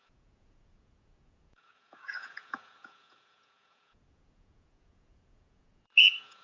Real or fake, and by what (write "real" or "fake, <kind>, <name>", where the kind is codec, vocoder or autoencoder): fake, vocoder, Vocos